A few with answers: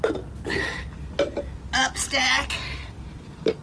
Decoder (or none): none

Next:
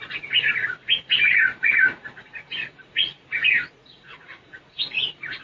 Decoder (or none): vocoder, Vocos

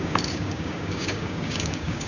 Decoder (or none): codec, DAC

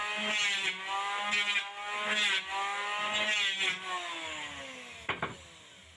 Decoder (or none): none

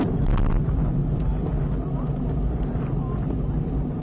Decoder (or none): none